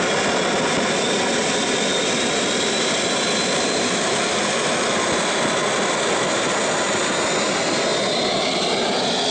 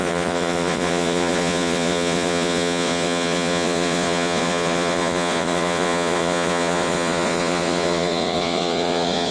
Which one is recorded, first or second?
first